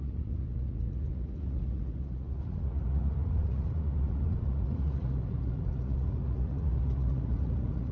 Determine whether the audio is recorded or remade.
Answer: remade